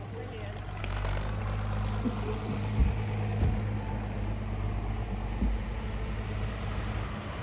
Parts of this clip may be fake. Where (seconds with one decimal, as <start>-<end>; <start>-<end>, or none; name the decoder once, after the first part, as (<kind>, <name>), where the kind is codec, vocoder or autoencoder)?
0.8-1.4 (codec, SNAC)